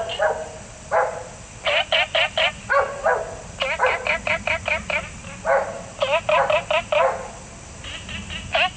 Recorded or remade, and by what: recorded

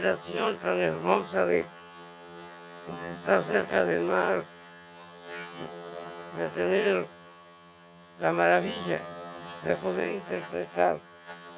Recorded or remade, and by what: remade, vocoder, HiFi-GAN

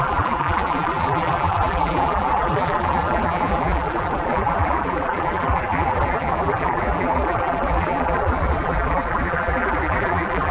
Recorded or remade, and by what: remade, vocoder, BigVGAN v2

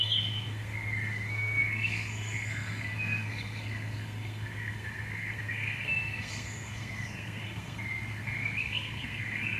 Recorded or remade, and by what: remade, codec, SNAC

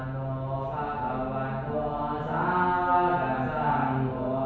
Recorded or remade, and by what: recorded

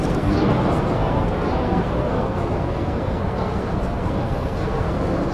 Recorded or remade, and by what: remade, codec, SNAC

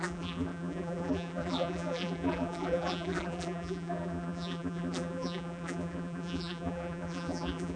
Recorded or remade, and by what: remade, vocoder, BigVGAN v2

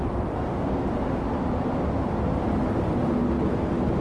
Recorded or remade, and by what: recorded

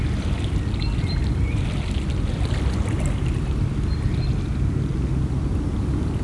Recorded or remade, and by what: recorded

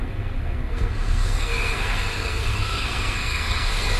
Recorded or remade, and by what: remade, codec, SNAC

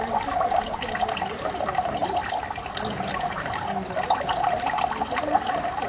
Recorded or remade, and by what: recorded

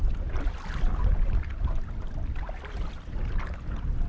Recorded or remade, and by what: recorded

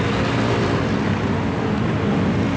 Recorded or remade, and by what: recorded